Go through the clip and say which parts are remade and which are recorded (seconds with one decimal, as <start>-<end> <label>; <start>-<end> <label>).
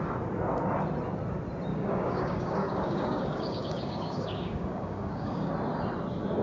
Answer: 0.0-1.7 recorded; 1.7-5.5 remade; 5.5-6.4 recorded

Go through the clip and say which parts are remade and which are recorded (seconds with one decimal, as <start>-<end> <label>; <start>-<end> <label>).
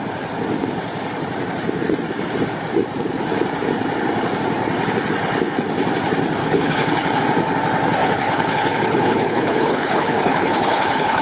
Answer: 0.0-6.4 recorded; 6.4-7.2 remade; 7.2-8.0 recorded; 8.0-11.2 remade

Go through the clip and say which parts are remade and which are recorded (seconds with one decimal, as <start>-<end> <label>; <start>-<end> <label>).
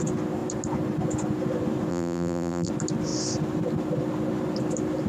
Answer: 0.0-1.9 recorded; 1.9-2.7 remade; 2.7-5.1 recorded